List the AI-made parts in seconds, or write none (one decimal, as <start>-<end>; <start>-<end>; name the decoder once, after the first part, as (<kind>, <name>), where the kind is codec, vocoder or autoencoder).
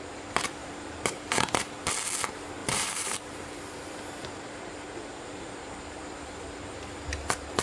0.6-1.6 (vocoder, BigVGAN v2); 2.6-7.0